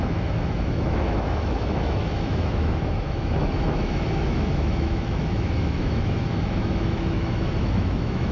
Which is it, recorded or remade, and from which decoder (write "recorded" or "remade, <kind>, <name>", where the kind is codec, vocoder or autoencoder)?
remade, autoencoder, DAC-VAE